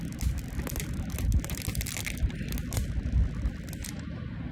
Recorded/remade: recorded